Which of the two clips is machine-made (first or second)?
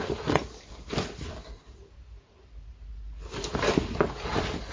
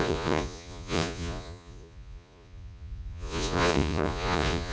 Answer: second